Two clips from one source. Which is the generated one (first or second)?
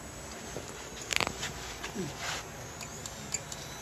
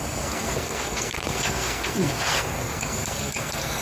second